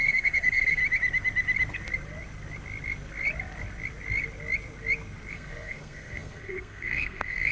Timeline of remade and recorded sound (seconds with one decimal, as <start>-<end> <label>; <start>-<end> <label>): 0.0-0.8 remade; 0.8-5.3 recorded; 5.3-7.5 remade